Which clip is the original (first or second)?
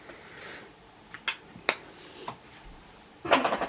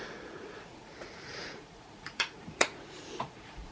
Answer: first